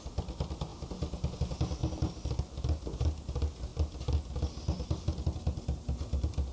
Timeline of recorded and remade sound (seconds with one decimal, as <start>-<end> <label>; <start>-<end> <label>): 0.0-6.5 recorded